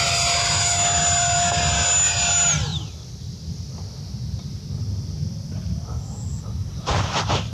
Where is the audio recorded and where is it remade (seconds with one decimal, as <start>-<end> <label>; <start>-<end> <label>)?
0.0-2.7 recorded; 2.7-3.5 remade; 3.5-7.5 recorded